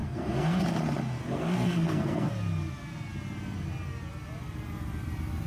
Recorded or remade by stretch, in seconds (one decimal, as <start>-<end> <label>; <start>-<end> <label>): 0.0-0.6 remade; 0.6-1.2 recorded; 1.2-2.3 remade; 2.3-5.5 recorded